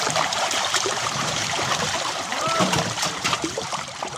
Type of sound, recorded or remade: remade